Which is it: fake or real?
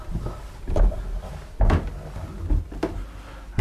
real